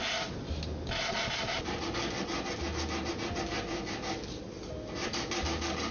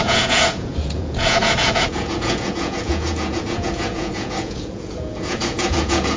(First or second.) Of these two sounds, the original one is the first